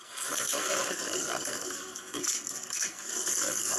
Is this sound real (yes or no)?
no